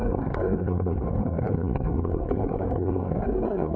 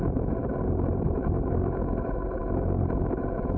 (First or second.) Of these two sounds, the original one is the second